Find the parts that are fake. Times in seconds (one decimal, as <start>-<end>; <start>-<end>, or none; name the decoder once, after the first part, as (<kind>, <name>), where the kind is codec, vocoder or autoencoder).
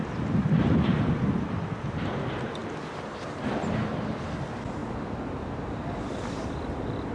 none